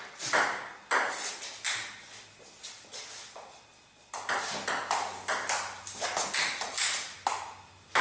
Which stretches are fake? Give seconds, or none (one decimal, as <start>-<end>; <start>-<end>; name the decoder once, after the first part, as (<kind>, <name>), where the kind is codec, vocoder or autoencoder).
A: none